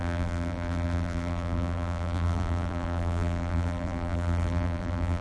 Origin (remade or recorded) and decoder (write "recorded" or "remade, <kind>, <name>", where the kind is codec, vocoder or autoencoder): remade, vocoder, BigVGAN v2